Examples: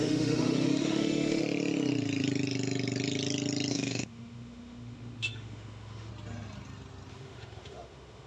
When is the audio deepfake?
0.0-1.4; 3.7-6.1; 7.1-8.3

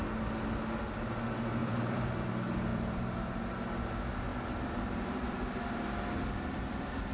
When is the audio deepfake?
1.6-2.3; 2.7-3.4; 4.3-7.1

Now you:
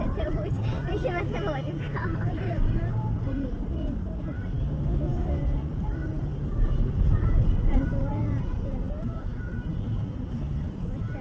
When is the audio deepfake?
2.1-4.6; 5.1-5.8

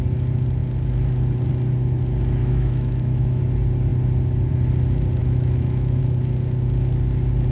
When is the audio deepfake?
2.4-3.4; 5.2-6.0

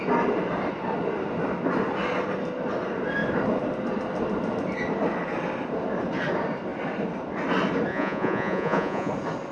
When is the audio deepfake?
7.9-9.1

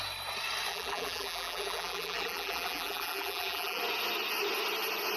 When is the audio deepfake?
0.7-3.8

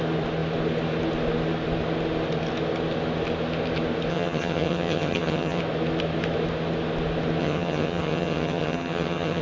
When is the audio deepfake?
4.1-5.6; 7.4-9.4

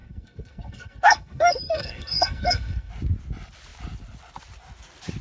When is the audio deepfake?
0.0-2.9